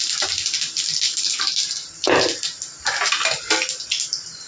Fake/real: real